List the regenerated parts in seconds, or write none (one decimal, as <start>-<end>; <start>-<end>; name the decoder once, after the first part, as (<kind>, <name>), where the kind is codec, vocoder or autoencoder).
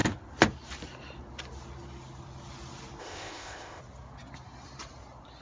3.0-3.8 (codec, ZipCodec)